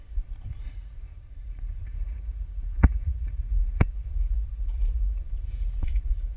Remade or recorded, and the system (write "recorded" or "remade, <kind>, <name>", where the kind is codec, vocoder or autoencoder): remade, vocoder, Vocos